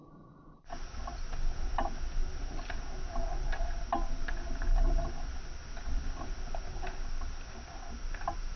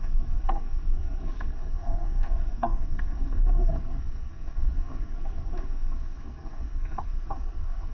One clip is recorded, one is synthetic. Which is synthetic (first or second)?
second